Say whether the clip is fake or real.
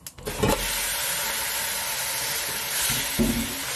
real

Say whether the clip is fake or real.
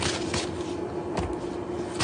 real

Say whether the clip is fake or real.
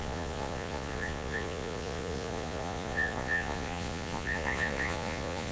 fake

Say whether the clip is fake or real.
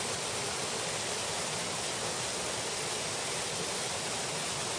real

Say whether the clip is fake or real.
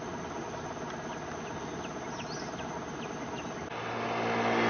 real